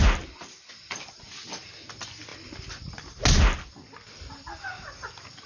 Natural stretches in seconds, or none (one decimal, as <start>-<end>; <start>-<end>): 0.0-5.5